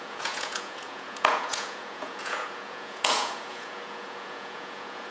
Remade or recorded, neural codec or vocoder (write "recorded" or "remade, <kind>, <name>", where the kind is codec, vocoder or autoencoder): remade, vocoder, Vocos